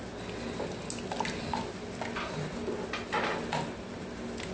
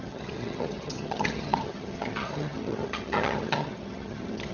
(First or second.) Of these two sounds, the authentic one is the first